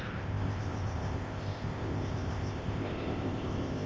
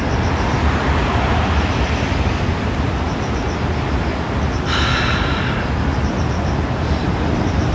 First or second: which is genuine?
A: second